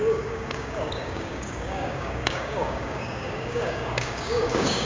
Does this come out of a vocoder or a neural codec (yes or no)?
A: yes